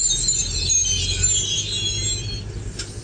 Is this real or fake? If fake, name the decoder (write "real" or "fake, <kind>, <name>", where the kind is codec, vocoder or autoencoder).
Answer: real